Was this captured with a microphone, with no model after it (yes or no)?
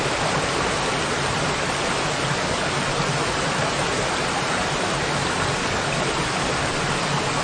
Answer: yes